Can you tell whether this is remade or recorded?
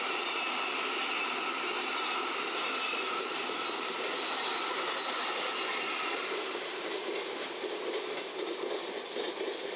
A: recorded